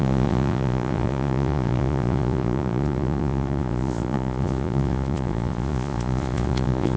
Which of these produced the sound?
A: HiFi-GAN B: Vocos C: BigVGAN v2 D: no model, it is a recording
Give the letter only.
B